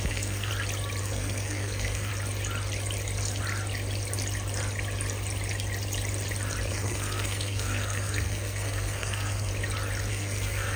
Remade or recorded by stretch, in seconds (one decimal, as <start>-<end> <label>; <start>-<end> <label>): 0.0-0.5 remade; 0.5-1.0 recorded; 1.0-2.1 remade; 2.1-6.7 recorded; 6.7-9.5 remade; 9.5-10.1 recorded; 10.1-10.8 remade